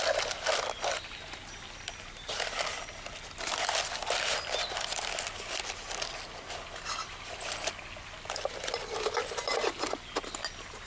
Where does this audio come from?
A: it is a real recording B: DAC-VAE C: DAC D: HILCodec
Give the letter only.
A